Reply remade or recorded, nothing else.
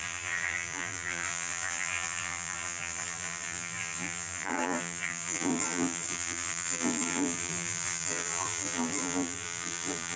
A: remade